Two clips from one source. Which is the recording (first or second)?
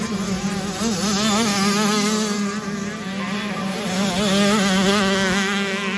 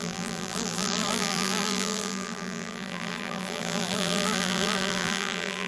first